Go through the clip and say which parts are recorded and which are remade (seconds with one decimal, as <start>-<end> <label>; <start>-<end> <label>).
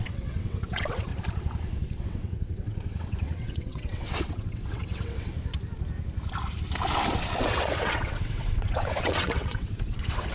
0.0-1.1 remade; 1.1-2.0 recorded; 2.0-5.3 remade; 5.3-7.4 recorded; 7.4-10.3 remade